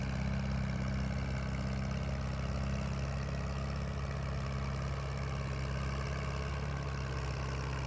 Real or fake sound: real